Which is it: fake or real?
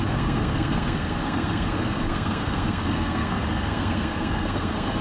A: fake